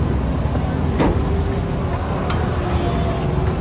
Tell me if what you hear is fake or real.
real